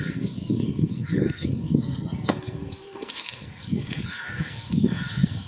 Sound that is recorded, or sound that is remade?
remade